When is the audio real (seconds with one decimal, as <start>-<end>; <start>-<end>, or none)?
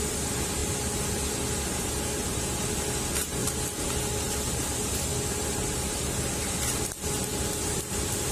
0.0-8.3